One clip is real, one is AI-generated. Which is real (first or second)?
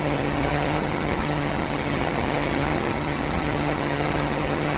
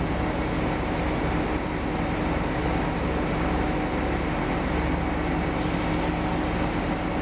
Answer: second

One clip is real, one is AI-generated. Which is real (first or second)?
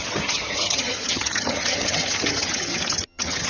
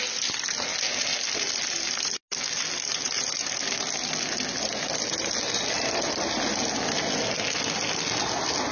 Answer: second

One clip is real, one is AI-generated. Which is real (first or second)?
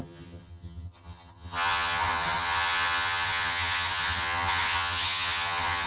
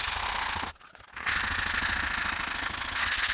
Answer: second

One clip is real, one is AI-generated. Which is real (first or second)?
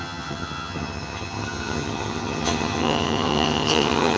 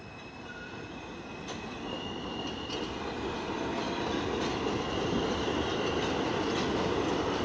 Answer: second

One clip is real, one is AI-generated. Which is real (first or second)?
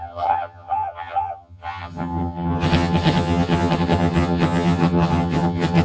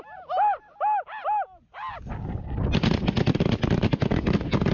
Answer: second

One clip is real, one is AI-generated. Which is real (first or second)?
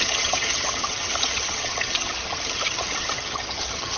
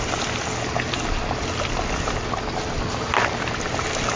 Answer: second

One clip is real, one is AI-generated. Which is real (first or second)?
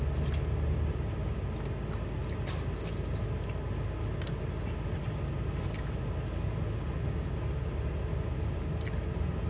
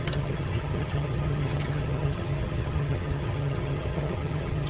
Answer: first